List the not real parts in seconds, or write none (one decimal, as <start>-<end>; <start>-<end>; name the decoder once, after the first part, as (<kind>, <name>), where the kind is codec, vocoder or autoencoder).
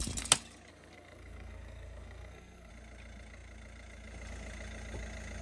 0.7-2.7 (codec, SNAC)